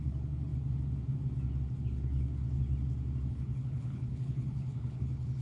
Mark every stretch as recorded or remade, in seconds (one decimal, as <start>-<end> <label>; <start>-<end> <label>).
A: 0.0-0.5 remade; 0.5-1.8 recorded; 1.8-2.4 remade; 2.4-3.3 recorded; 3.3-5.4 remade